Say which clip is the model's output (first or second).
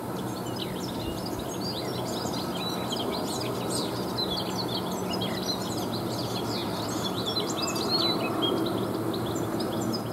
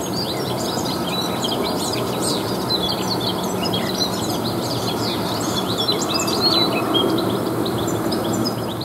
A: second